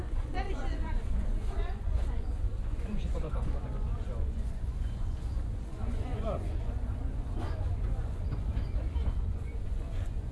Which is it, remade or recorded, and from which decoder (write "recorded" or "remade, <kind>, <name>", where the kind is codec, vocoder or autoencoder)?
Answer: remade, vocoder, Vocos